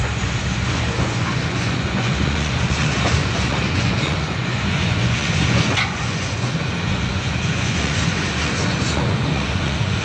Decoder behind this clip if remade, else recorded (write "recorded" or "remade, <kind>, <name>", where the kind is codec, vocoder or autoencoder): remade, vocoder, Vocos